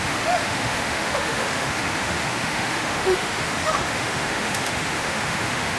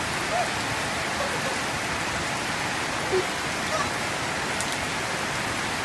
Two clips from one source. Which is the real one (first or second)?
second